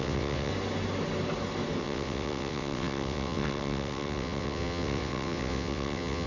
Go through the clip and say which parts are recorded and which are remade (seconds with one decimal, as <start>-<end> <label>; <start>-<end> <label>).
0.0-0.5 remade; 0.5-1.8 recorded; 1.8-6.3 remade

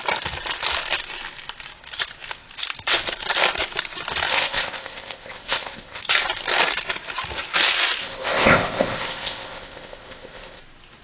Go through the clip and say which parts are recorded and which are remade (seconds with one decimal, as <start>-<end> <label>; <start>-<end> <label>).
0.0-4.3 recorded; 4.3-6.0 remade; 6.0-8.0 recorded; 8.0-10.6 remade; 10.6-11.0 recorded

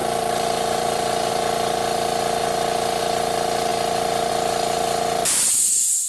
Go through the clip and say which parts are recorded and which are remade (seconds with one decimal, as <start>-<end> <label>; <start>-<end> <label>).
0.0-1.3 remade; 1.3-6.1 recorded

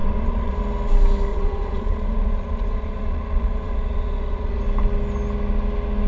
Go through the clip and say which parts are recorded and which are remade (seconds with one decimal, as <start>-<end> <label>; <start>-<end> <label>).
0.0-0.6 remade; 0.6-1.3 recorded; 1.3-4.6 remade; 4.6-6.1 recorded